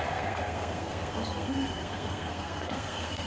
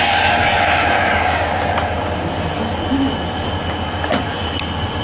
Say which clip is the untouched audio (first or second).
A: second